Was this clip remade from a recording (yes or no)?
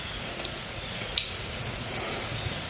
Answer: yes